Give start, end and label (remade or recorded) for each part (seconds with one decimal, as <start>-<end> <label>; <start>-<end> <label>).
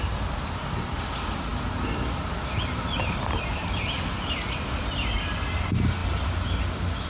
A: 0.0-7.1 recorded